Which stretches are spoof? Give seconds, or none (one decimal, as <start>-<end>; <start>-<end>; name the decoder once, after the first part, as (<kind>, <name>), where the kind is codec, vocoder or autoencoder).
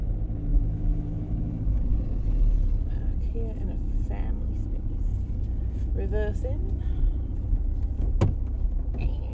0.5-1.8 (autoencoder, DAC-VAE)